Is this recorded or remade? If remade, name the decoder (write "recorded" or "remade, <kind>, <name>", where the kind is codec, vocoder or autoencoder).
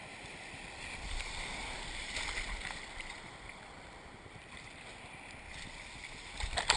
recorded